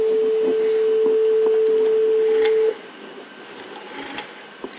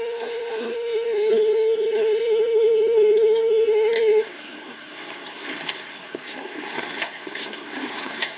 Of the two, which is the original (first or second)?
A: first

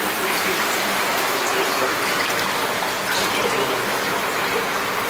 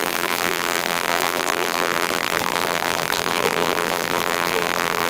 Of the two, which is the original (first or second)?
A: first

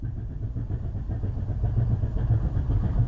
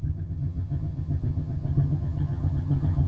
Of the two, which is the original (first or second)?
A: first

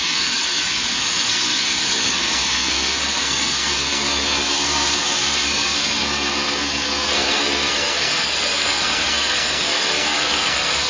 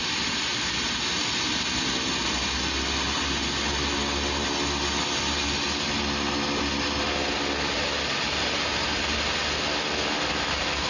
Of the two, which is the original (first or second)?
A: second